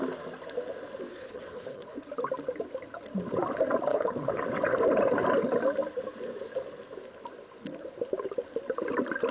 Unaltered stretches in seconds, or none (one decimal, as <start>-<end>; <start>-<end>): 0.0-1.1; 2.1-3.9; 4.4-9.3